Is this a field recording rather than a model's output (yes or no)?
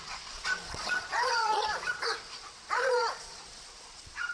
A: no